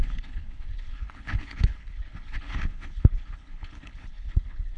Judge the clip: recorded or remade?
remade